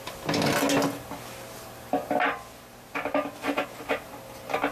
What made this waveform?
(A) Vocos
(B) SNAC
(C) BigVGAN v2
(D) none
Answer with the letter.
D